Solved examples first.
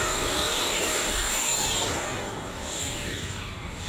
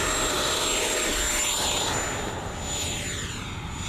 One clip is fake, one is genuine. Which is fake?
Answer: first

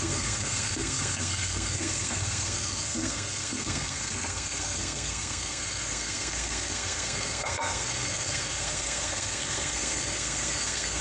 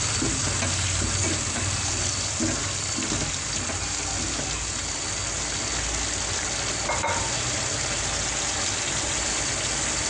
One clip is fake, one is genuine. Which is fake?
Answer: first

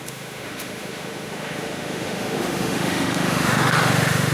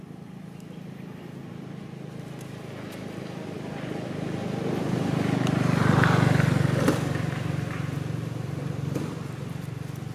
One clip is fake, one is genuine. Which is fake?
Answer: first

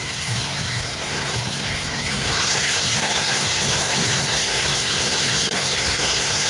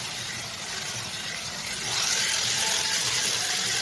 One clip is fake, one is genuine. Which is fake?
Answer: first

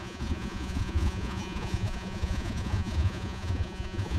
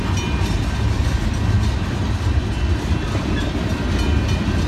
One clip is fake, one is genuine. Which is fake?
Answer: first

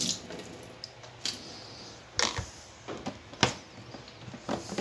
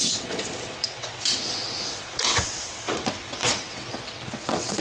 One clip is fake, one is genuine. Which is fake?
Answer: second